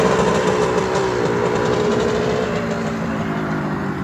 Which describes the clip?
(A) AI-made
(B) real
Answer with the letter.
B